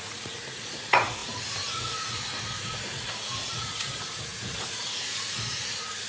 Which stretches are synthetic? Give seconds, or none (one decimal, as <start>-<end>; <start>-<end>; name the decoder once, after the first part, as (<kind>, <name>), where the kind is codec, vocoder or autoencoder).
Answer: 0.0-6.1 (vocoder, Vocos)